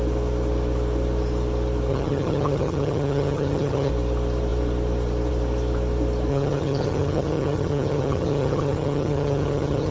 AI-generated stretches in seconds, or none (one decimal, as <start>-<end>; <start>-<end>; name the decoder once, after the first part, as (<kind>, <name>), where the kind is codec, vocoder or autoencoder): 1.9-3.9 (vocoder, HiFi-GAN); 6.3-9.9